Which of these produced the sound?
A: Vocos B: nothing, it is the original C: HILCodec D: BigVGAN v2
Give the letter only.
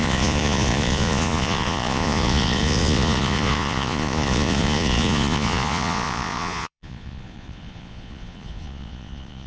A